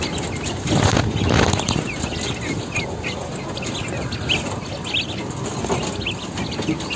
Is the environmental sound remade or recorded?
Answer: recorded